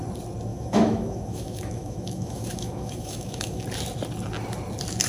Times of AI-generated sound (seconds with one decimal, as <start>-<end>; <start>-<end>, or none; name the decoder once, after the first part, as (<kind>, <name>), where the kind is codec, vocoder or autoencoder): 0.5-3.6 (autoencoder, DAC-VAE)